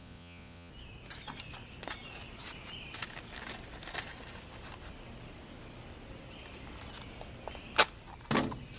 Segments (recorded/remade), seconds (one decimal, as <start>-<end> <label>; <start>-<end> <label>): 0.0-0.7 remade; 0.7-8.8 recorded